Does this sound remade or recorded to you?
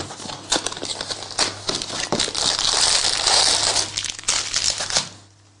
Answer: recorded